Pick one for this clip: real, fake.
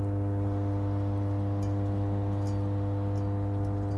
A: real